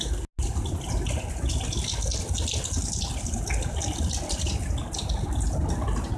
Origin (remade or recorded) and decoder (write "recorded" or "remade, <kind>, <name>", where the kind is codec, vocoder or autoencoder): recorded